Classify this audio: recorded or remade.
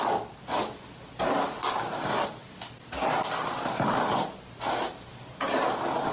recorded